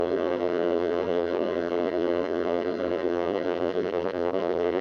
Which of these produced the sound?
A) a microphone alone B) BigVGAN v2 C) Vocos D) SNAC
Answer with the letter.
B